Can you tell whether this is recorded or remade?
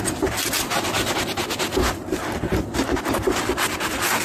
recorded